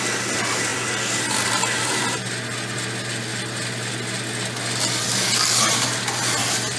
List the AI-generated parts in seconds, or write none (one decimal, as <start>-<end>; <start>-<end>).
none